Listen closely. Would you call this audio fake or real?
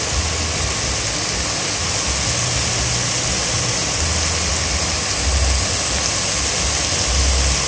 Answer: real